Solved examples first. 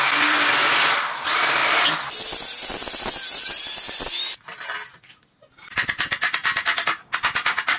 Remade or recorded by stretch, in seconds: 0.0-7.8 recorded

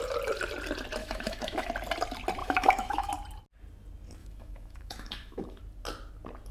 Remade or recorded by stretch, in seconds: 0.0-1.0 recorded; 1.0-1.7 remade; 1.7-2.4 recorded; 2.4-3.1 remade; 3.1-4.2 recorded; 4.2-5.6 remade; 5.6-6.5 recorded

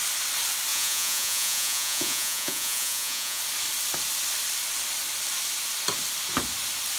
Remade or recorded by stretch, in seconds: 0.0-0.7 recorded; 0.7-3.4 remade; 3.4-7.0 recorded

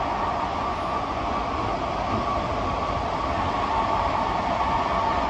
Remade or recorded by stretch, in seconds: 0.0-1.4 remade; 1.4-4.6 recorded; 4.6-5.3 remade

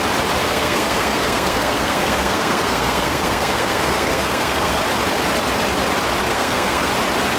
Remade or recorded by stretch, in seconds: 0.0-0.4 recorded; 0.4-4.8 remade; 4.8-6.3 recorded; 6.3-6.9 remade; 6.9-7.4 recorded

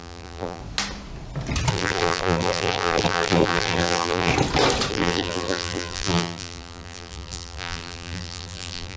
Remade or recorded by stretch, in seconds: 0.0-0.6 remade; 0.6-1.7 recorded; 1.7-4.3 remade; 4.3-4.9 recorded; 4.9-9.0 remade